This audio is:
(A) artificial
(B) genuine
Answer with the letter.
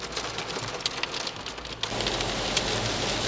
B